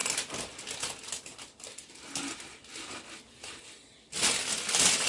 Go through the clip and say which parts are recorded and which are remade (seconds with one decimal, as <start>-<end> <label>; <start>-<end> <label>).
0.0-5.1 recorded